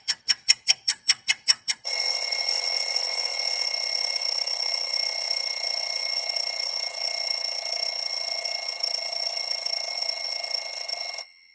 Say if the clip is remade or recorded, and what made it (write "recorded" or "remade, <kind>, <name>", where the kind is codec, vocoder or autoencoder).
remade, vocoder, WaveNeXt